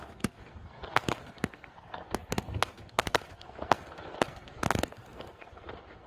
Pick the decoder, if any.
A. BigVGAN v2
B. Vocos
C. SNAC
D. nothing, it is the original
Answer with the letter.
C